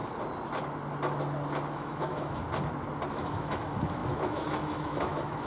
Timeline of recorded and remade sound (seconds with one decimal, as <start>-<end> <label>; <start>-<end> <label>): 0.0-1.7 recorded; 1.7-2.4 remade; 2.4-3.1 recorded; 3.1-5.5 remade

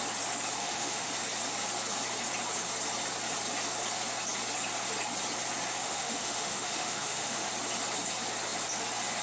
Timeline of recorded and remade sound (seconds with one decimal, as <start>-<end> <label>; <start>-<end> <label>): 0.0-0.6 recorded; 0.6-1.1 remade; 1.1-5.8 recorded; 5.8-7.5 remade; 7.5-9.2 recorded

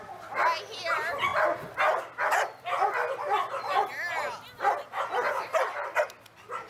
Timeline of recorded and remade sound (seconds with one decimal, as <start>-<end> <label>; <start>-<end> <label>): 0.0-6.7 recorded